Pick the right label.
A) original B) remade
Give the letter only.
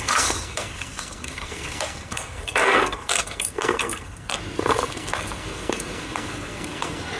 B